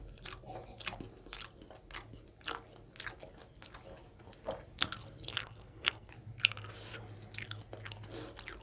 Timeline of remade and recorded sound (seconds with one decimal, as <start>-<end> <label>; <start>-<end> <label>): 0.0-5.3 recorded; 5.3-6.1 remade; 6.1-8.6 recorded